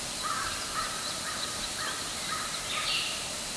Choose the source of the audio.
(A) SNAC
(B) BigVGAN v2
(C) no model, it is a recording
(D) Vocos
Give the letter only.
B